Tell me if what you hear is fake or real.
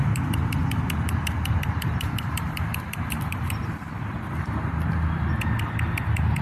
real